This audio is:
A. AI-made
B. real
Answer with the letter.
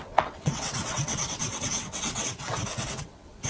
A